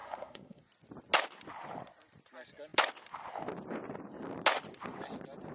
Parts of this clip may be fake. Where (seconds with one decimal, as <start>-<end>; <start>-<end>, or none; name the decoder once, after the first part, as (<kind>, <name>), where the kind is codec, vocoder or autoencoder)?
0.0-0.6 (codec, SNAC)